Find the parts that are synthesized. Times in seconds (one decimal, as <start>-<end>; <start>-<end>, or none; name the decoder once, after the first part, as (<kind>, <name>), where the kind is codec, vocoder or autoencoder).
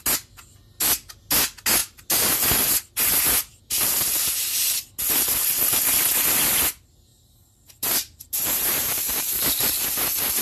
7.1-9.8 (vocoder, BigVGAN v2)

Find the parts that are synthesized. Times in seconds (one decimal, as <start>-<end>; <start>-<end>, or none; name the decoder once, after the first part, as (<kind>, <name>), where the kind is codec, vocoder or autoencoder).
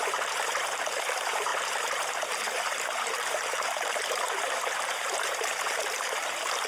0.0-6.7 (vocoder, BigVGAN v2)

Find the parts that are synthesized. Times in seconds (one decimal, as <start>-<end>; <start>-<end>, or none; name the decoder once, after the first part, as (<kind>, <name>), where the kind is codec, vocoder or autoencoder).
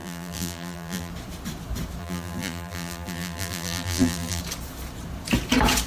0.0-1.1 (vocoder, BigVGAN v2); 2.0-4.4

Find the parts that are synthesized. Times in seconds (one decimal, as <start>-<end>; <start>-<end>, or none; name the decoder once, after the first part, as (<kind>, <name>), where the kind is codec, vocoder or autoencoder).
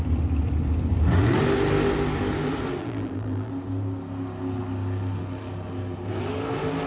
2.8-3.5 (vocoder, BigVGAN v2)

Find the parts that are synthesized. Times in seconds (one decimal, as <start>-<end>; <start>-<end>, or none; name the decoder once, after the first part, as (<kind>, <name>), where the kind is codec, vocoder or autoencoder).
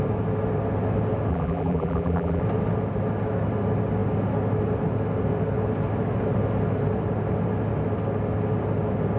1.3-2.4 (vocoder, BigVGAN v2)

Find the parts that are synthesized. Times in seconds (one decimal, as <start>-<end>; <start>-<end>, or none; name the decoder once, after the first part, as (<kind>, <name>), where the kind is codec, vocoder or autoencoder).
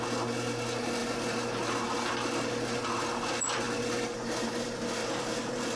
5.0-5.8 (vocoder, BigVGAN v2)